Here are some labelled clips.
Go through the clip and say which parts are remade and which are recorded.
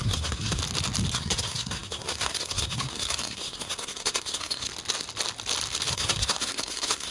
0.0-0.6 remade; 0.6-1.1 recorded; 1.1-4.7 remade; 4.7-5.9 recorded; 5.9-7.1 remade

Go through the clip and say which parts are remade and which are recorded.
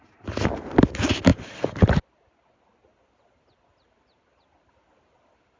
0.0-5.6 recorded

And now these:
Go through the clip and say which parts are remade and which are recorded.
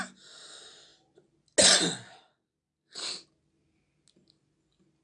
0.0-5.0 recorded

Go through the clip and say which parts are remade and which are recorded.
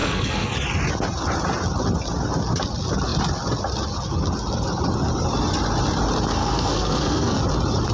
0.0-0.5 remade; 0.5-6.4 recorded; 6.4-7.4 remade; 7.4-7.9 recorded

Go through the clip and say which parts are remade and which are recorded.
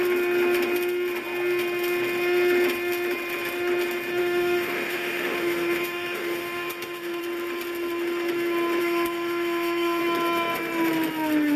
0.0-4.2 recorded; 4.2-7.2 remade; 7.2-8.8 recorded; 8.8-10.0 remade; 10.0-11.6 recorded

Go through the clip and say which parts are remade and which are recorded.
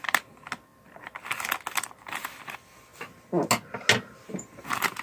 0.0-5.0 recorded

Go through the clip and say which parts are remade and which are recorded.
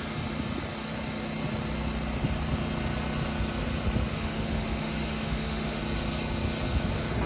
0.0-4.1 recorded; 4.1-5.8 remade; 5.8-7.3 recorded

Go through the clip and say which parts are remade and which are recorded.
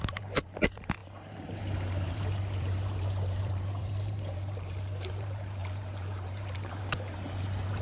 0.0-7.8 remade